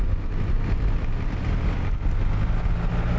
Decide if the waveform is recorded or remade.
recorded